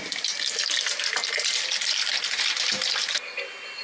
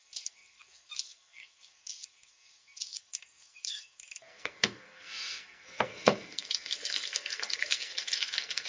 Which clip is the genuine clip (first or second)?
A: first